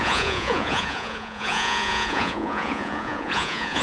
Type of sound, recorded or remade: remade